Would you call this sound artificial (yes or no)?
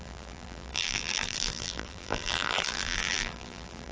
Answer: yes